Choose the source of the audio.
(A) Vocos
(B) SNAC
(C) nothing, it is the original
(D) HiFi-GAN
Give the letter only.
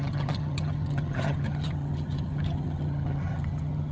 D